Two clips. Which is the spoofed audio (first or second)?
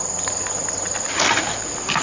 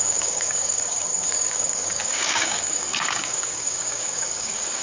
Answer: second